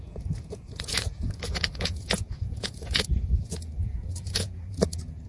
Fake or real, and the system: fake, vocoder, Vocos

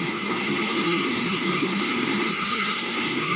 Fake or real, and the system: fake, codec, SNAC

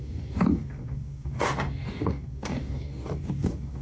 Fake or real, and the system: fake, codec, DAC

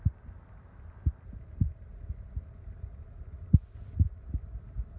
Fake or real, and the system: real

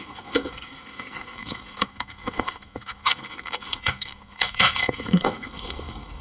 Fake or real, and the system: fake, codec, SNAC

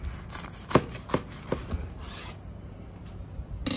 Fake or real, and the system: real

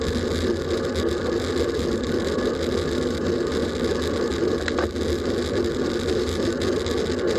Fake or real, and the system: real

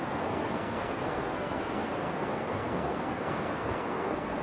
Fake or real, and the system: fake, codec, SNAC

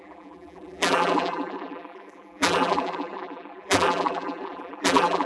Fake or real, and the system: fake, vocoder, BigVGAN v2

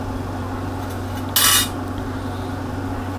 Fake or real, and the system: real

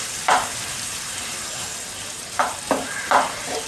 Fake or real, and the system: fake, vocoder, BigVGAN v2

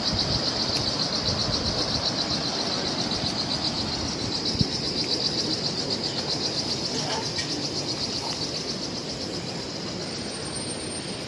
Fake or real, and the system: real